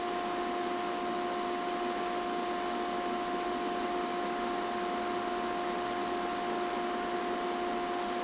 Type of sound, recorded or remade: recorded